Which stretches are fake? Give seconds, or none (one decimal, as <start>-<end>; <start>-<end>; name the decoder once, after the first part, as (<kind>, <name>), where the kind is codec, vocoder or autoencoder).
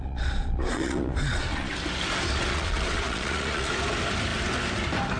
0.0-1.7 (vocoder, Vocos); 2.5-3.7